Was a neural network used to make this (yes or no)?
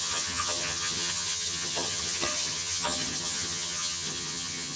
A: yes